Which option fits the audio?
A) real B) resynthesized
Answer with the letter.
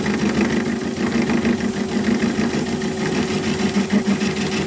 A